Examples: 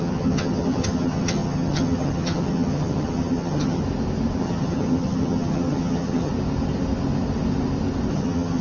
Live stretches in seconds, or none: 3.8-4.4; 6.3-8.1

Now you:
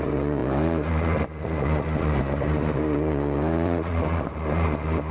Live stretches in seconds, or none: none

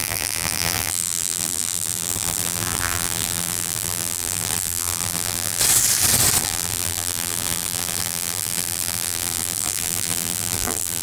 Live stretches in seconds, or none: 5.6-6.4

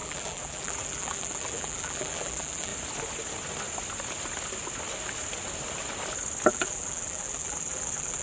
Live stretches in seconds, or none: 2.7-6.5

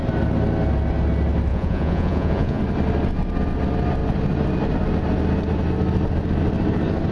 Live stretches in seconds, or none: 0.0-1.5; 2.6-7.1

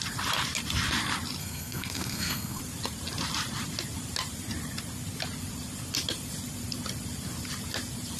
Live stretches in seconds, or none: 0.0-1.4; 2.6-8.2

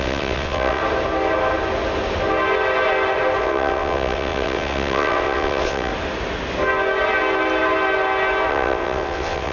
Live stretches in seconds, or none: 0.8-3.4; 5.9-8.5